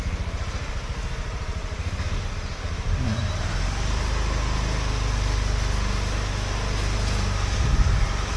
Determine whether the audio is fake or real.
real